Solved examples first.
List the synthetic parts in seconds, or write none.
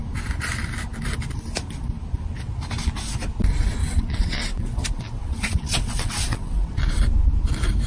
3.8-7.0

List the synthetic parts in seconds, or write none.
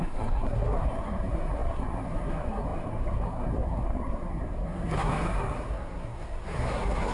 0.0-7.1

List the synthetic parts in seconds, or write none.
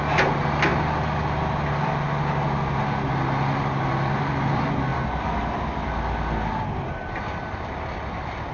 none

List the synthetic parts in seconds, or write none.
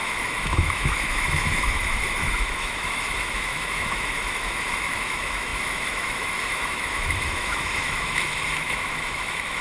0.0-9.6